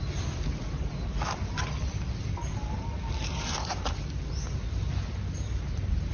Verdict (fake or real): real